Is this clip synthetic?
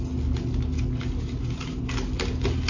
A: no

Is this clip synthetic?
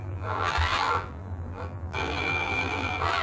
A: yes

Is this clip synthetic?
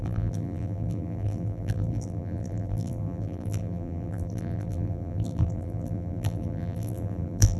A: yes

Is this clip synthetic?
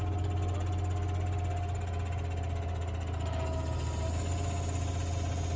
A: no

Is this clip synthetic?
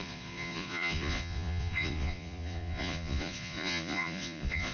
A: yes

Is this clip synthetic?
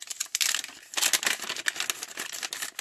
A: no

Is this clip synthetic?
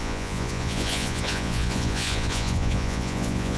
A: yes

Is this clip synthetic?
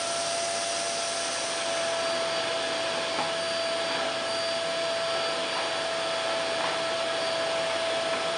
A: no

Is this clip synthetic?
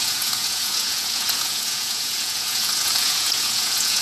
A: yes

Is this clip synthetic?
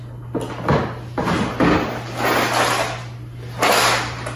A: no